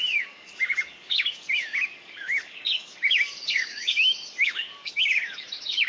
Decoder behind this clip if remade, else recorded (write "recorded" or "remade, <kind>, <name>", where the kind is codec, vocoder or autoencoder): remade, codec, DAC